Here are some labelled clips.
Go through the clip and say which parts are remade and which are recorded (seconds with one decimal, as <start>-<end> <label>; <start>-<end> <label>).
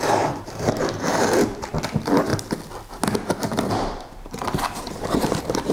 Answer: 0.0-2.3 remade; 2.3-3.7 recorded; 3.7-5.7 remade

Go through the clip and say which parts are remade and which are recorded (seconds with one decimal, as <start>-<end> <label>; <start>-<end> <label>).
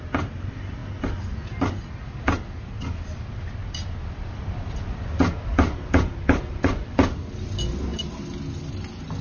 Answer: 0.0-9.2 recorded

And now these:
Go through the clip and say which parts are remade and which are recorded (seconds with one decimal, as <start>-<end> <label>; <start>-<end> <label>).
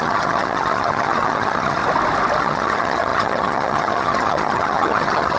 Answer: 0.0-1.8 remade; 1.8-2.4 recorded; 2.4-5.4 remade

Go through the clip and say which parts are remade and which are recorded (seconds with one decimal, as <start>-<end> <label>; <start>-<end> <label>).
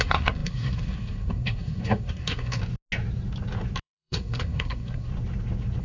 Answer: 0.0-2.6 remade; 2.6-3.8 recorded; 3.8-5.1 remade; 5.1-5.8 recorded